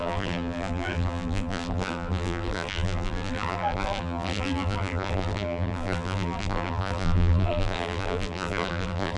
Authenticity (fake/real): fake